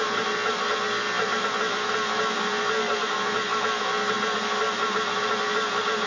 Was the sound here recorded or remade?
recorded